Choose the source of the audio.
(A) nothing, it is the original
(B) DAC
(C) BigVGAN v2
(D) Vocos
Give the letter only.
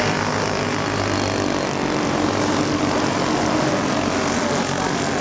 A